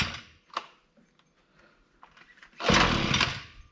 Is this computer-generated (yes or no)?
no